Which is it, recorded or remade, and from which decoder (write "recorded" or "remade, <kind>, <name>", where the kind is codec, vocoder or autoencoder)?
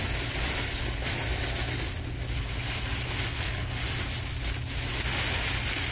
recorded